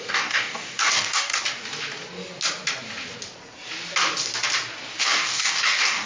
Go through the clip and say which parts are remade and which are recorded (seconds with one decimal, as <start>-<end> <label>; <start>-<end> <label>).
0.0-1.3 remade; 1.3-5.0 recorded; 5.0-6.1 remade